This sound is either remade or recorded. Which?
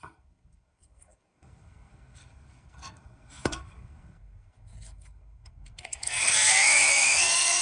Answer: remade